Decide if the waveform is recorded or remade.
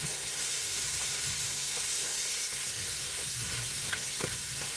remade